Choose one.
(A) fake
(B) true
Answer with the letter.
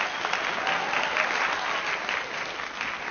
B